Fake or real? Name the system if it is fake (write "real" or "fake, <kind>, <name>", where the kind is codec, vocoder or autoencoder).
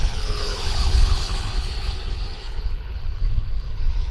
fake, codec, HILCodec